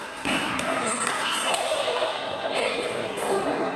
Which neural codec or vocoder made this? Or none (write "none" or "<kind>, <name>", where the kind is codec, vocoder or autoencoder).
codec, SNAC